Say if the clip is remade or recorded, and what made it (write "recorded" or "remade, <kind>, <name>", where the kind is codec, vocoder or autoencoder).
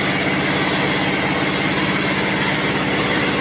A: recorded